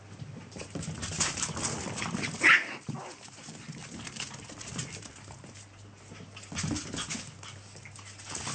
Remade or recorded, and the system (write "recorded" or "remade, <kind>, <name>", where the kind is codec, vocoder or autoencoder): recorded